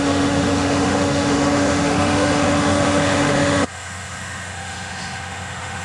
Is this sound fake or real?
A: fake